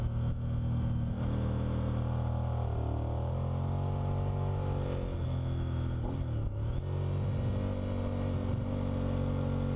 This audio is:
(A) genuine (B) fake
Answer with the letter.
A